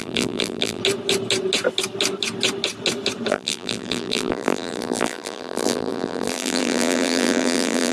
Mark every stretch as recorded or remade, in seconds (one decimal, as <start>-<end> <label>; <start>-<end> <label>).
0.0-0.8 remade; 0.8-3.3 recorded; 3.3-7.9 remade